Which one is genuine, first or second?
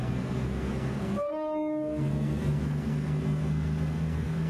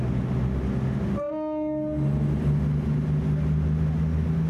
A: second